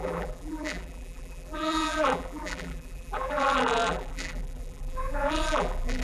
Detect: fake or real fake